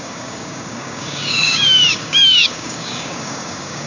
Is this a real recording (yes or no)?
no